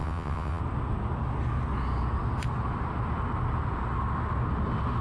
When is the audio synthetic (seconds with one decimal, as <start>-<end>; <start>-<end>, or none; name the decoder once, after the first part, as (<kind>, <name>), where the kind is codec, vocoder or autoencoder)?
0.0-0.6 (vocoder, WaveNeXt)